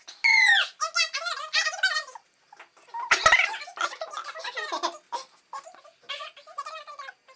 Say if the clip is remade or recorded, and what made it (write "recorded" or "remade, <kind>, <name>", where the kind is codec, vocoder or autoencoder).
recorded